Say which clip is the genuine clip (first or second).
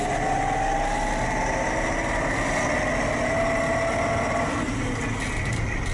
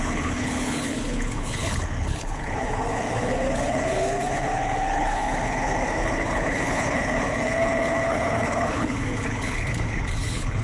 first